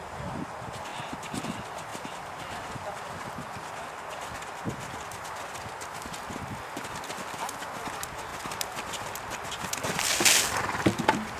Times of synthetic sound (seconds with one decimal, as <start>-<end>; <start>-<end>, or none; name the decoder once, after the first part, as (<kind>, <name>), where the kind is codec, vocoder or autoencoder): none